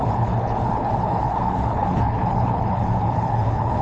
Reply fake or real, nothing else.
fake